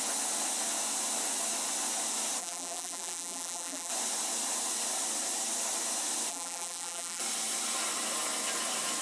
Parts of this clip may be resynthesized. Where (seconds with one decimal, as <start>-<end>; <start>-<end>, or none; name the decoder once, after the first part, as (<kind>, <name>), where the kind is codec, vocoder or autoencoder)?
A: 2.4-3.9 (vocoder, BigVGAN v2); 6.3-7.2